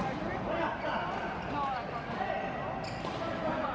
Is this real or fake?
real